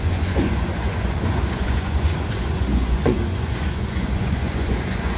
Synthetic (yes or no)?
yes